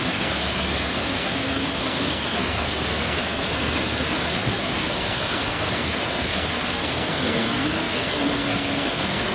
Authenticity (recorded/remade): remade